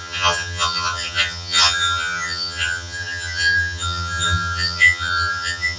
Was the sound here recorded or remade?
remade